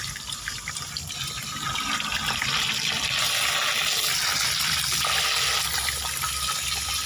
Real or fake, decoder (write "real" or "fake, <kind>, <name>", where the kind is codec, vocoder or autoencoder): real